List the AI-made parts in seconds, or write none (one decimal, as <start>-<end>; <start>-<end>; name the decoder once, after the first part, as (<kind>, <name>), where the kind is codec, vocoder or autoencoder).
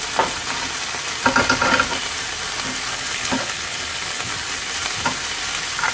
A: 2.9-4.3 (codec, HILCodec)